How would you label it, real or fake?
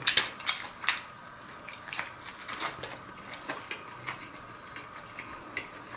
real